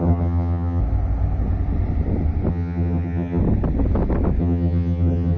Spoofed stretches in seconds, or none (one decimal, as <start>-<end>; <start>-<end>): 0.0-0.8; 2.5-3.4; 4.4-5.4